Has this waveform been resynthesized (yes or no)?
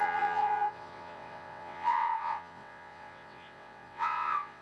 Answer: yes